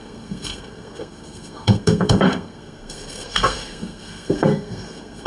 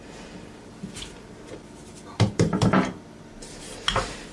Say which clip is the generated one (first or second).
first